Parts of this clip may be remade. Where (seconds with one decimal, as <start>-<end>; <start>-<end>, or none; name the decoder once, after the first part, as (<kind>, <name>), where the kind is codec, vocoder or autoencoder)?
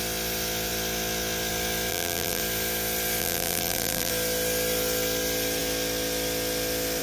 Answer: 1.9-2.4 (vocoder, BigVGAN v2); 3.2-4.1